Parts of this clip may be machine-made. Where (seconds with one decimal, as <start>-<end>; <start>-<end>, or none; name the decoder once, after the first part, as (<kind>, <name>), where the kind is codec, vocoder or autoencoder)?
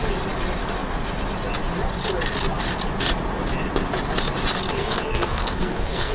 4.7-6.1 (codec, SNAC)